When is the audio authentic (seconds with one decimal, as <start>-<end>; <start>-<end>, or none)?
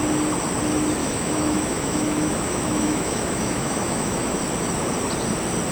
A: 0.0-1.0; 4.4-5.7